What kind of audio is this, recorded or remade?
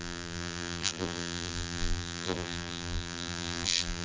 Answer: remade